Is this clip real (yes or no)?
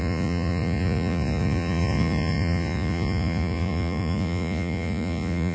no